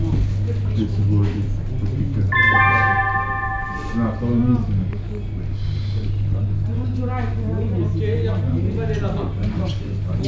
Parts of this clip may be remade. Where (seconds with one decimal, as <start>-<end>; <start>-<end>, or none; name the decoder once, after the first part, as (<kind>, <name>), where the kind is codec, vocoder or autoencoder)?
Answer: none